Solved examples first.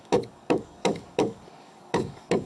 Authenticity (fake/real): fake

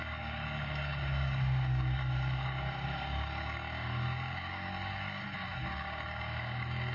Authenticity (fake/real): fake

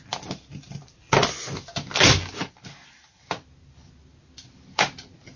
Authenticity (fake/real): real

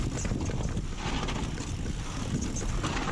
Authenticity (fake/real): real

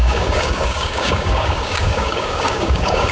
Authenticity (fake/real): fake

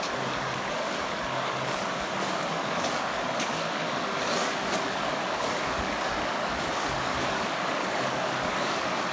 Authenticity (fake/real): fake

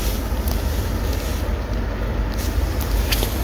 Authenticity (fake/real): real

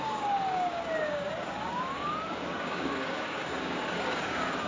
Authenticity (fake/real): fake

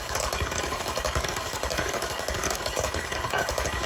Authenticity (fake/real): fake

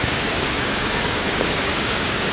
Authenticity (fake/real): fake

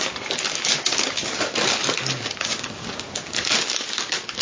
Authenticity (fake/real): fake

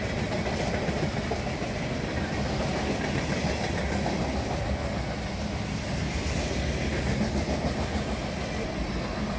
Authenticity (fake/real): real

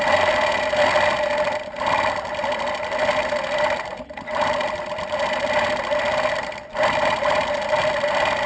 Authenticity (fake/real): real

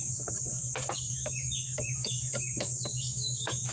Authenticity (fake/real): fake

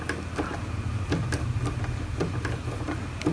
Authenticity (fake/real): real